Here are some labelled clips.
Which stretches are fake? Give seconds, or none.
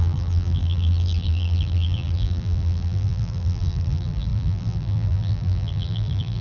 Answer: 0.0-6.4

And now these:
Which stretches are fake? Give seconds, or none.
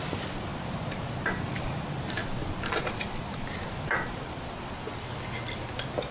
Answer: 0.0-2.2